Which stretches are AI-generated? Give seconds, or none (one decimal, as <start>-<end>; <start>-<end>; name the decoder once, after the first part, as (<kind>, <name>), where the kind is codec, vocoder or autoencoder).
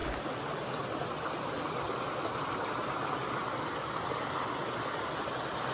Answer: none